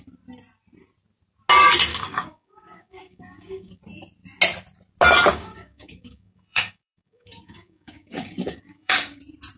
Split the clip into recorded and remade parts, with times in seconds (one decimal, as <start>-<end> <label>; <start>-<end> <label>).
0.0-1.9 recorded; 1.9-3.8 remade; 3.8-5.3 recorded; 5.3-9.2 remade; 9.2-9.6 recorded